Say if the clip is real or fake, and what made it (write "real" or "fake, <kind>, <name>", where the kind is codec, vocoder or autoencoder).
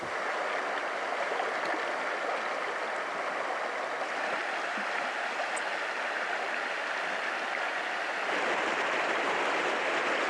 real